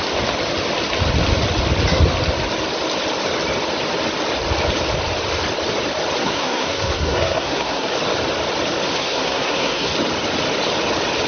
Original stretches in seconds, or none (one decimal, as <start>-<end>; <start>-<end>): 0.0-6.2; 7.9-8.9; 9.9-11.3